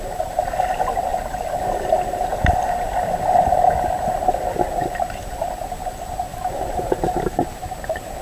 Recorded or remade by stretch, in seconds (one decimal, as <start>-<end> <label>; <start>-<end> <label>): 0.0-6.3 recorded; 6.3-7.4 remade; 7.4-8.2 recorded